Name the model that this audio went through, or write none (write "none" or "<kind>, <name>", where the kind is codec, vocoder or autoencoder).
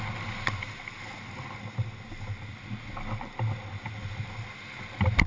none